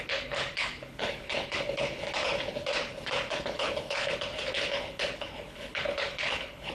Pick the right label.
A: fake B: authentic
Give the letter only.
A